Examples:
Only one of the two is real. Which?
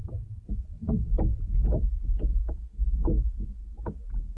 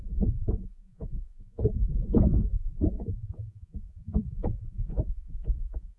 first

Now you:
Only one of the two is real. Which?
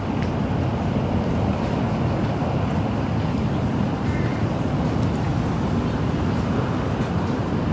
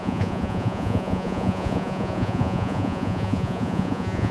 first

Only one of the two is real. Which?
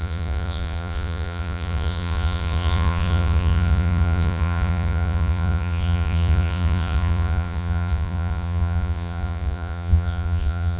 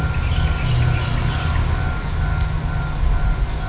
second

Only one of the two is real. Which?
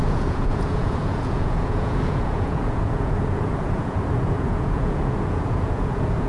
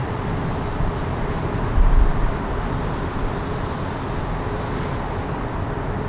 second